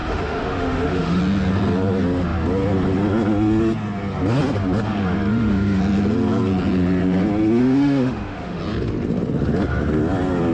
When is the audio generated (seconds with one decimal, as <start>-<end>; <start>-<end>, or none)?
0.0-1.2; 5.3-5.8; 7.6-8.6